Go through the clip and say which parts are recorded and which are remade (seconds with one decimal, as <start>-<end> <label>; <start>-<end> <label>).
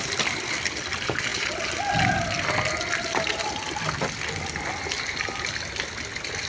0.0-6.5 recorded